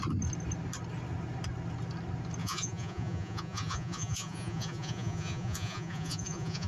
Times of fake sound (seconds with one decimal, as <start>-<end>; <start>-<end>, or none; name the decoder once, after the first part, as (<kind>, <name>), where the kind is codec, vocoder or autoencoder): 2.4-6.7 (vocoder, Vocos)